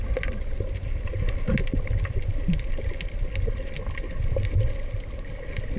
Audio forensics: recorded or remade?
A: recorded